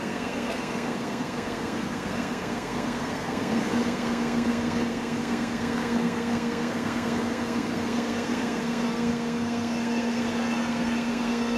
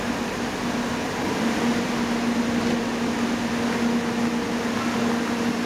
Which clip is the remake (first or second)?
first